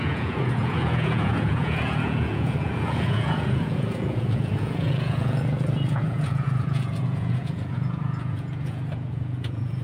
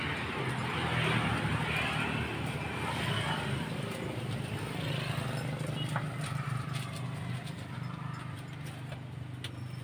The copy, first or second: first